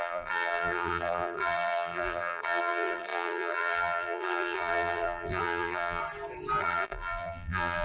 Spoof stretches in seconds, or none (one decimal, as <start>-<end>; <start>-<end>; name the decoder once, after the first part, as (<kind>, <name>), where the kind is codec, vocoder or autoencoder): 0.0-6.0 (vocoder, BigVGAN v2); 6.6-7.8